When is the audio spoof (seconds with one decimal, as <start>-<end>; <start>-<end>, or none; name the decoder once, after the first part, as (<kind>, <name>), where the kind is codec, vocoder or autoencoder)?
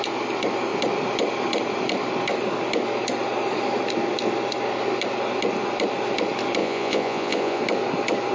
6.6-7.6 (vocoder, Vocos)